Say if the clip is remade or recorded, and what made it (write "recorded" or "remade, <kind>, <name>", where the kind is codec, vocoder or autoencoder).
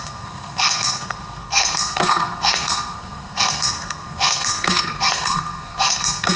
remade, codec, SNAC